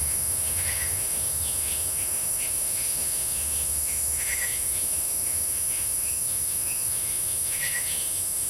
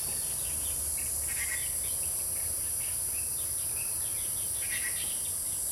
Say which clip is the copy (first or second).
first